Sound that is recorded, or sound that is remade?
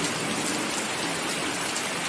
recorded